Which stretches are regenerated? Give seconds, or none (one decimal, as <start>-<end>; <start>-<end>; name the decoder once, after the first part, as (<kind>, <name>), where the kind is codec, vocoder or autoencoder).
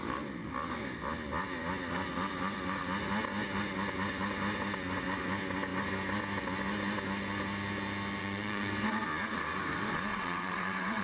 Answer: 8.2-8.7 (vocoder, WaveNeXt); 10.1-11.0